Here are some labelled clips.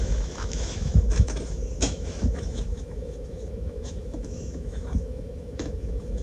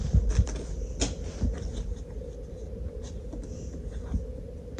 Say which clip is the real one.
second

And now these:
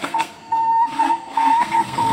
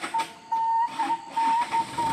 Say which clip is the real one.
second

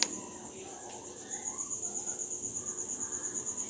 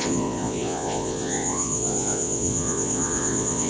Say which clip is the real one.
first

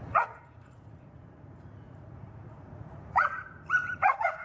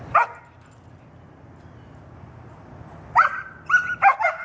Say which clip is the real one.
second